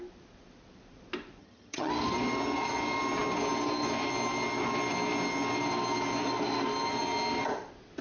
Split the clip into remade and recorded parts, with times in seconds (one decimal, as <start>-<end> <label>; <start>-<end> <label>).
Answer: 0.0-1.4 recorded; 1.4-1.9 remade; 1.9-8.0 recorded